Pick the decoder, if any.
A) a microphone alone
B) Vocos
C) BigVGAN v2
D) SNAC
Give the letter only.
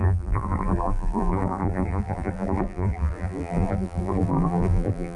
C